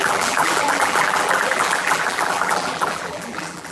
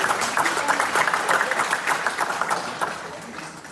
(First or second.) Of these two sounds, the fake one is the first